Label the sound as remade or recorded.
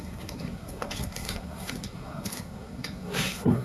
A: remade